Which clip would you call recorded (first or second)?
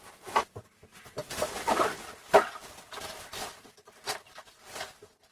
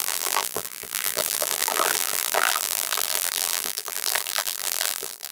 first